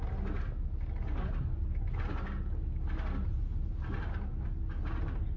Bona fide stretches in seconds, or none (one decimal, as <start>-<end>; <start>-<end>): 0.0-5.4